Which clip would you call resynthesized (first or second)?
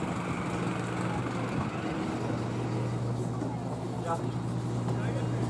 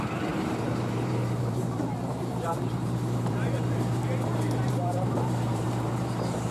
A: second